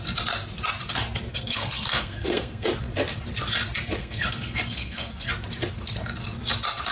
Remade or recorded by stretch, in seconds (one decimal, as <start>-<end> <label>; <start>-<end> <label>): 0.0-1.3 recorded; 1.3-2.7 remade; 2.7-4.0 recorded; 4.0-5.3 remade; 5.3-6.9 recorded